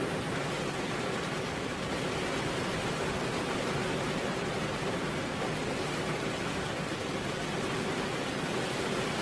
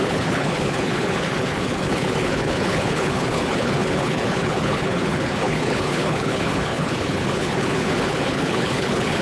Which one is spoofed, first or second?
second